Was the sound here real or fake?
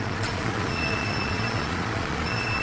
fake